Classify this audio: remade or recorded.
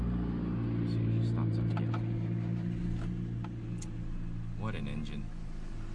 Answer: recorded